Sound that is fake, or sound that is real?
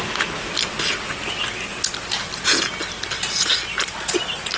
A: real